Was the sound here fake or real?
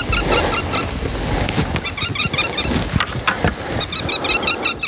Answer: real